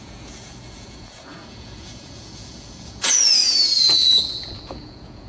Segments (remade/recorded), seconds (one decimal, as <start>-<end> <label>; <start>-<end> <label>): 0.0-5.3 remade